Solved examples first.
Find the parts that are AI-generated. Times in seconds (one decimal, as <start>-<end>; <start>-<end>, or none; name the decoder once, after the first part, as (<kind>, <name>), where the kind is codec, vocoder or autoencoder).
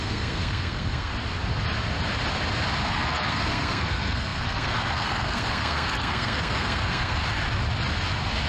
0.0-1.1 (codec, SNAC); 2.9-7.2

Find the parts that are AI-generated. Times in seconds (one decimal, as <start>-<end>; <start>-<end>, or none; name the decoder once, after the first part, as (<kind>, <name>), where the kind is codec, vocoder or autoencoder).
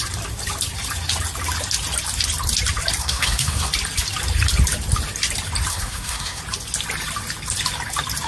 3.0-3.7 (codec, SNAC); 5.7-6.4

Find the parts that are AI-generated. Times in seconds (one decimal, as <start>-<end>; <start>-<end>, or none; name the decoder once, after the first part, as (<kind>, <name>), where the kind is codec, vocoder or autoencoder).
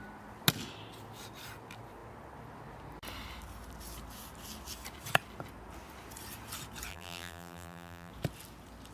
6.9-8.1 (vocoder, BigVGAN v2)